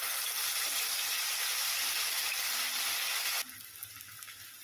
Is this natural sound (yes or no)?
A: yes